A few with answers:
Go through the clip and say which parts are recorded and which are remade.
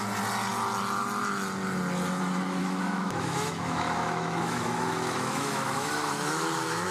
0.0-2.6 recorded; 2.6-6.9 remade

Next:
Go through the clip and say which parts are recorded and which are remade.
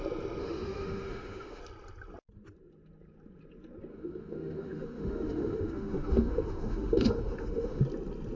0.0-0.4 recorded; 0.4-1.6 remade; 1.6-3.9 recorded; 3.9-7.8 remade; 7.8-8.4 recorded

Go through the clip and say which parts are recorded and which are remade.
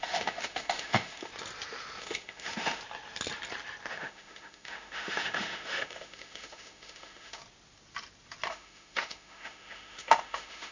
0.0-1.3 remade; 1.3-2.0 recorded; 2.0-2.8 remade; 2.8-3.9 recorded; 3.9-7.4 remade; 7.4-8.5 recorded; 8.5-10.7 remade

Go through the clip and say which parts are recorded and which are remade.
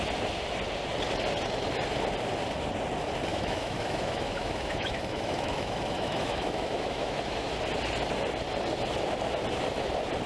0.0-3.3 recorded; 3.3-7.5 remade; 7.5-10.3 recorded